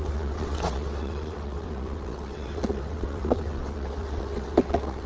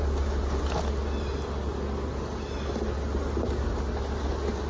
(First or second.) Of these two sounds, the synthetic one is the first